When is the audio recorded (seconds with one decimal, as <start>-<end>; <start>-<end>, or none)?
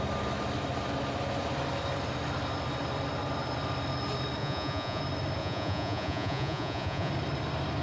0.0-4.4; 5.0-5.4; 7.1-7.8